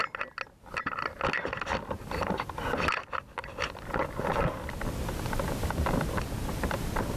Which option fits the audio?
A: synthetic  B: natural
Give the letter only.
B